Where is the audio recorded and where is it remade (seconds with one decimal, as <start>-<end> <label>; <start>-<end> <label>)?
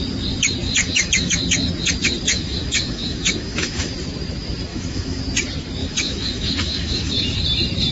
0.0-0.8 recorded; 0.8-1.4 remade; 1.4-2.3 recorded; 2.3-3.9 remade; 3.9-4.7 recorded; 4.7-5.2 remade; 5.2-5.8 recorded; 5.8-7.4 remade; 7.4-7.9 recorded